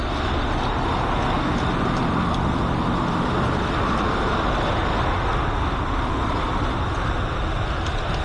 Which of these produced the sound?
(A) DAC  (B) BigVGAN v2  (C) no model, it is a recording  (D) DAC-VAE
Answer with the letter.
C